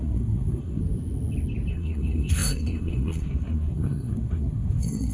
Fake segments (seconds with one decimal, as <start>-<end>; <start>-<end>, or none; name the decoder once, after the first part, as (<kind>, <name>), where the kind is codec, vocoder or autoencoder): 0.0-0.8 (codec, SNAC); 1.7-5.1

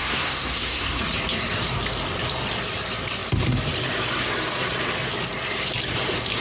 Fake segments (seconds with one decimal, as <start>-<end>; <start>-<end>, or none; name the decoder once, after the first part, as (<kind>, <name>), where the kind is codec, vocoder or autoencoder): 0.0-1.0 (codec, SNAC)

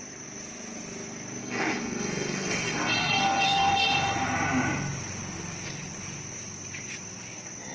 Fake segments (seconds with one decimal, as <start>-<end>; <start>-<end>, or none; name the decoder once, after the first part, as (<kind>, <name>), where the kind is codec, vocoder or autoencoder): 1.4-3.7 (codec, SNAC)